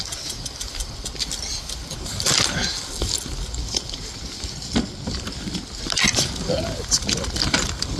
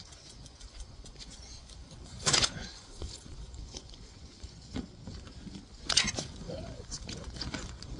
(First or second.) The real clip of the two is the first